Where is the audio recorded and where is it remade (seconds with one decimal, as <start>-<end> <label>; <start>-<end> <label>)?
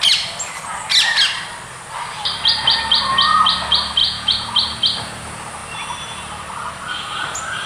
0.0-4.0 recorded; 4.0-4.5 remade; 4.5-7.7 recorded